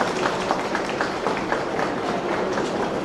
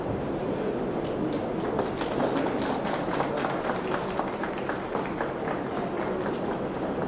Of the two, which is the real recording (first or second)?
second